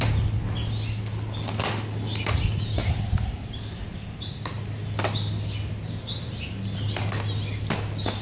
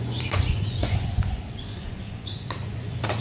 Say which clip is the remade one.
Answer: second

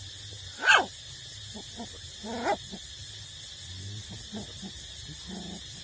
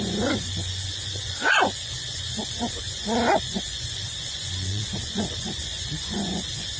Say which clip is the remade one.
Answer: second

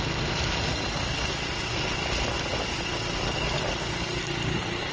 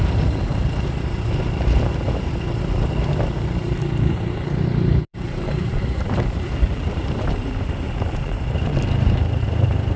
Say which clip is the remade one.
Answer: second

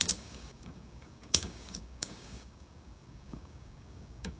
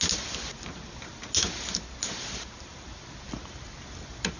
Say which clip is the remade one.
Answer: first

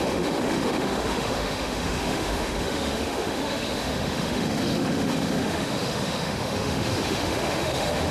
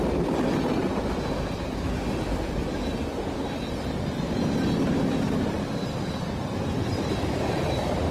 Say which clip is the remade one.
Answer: first